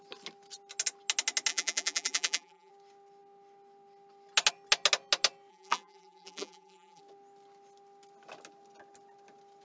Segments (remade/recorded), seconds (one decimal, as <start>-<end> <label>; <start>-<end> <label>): 0.0-1.5 recorded; 1.5-2.7 remade; 2.7-5.5 recorded; 5.5-7.0 remade; 7.0-9.6 recorded